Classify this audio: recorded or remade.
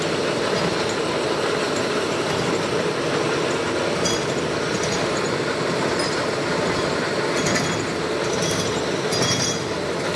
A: recorded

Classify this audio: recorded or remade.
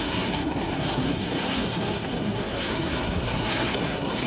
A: remade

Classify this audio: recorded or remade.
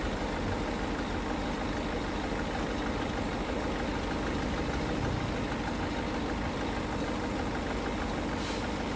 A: recorded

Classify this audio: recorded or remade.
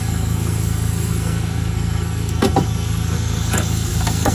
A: remade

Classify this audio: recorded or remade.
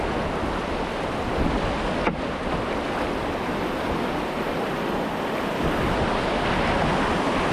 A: recorded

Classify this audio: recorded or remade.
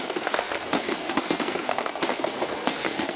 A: remade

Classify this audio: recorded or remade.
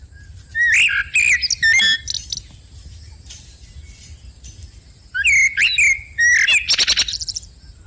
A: recorded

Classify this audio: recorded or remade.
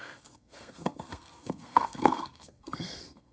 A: remade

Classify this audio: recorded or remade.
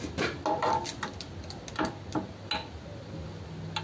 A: recorded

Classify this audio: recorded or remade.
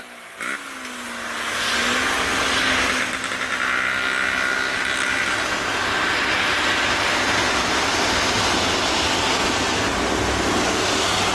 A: recorded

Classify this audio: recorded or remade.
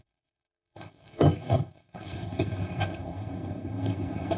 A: remade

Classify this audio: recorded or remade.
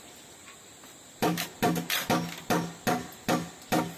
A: recorded